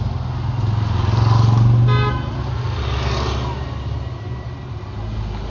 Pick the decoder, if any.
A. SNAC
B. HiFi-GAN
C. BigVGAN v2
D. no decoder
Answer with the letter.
D